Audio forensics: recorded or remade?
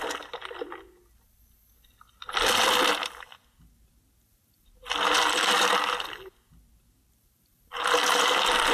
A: recorded